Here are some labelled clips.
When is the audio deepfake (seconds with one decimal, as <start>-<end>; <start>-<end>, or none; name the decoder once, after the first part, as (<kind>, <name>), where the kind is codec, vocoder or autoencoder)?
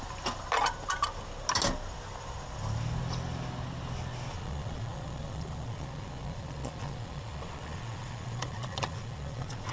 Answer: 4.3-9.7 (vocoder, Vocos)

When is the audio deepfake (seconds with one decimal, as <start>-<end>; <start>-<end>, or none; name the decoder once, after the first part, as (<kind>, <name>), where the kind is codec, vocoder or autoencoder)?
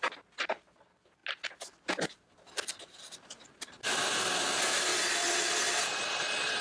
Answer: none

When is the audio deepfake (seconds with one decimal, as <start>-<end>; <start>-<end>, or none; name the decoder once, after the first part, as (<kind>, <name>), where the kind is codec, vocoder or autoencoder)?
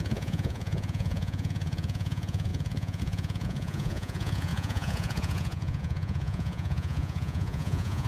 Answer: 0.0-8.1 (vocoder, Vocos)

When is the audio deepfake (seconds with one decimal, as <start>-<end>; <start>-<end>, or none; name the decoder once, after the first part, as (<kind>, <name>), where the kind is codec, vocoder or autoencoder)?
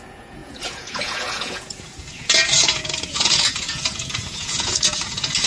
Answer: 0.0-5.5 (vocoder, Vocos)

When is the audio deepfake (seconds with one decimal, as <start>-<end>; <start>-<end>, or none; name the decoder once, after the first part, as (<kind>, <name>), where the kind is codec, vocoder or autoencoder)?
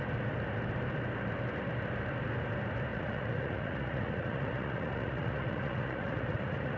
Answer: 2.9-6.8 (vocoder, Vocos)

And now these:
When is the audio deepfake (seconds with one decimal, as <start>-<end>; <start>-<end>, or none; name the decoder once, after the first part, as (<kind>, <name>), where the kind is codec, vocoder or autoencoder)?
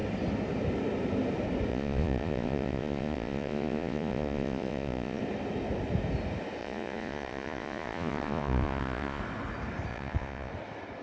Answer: 1.7-5.2 (vocoder, Vocos); 6.6-9.2; 9.9-10.5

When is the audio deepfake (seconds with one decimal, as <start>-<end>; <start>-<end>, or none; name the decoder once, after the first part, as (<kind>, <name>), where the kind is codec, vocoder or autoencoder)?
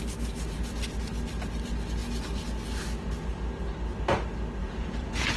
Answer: 4.6-5.4 (vocoder, Vocos)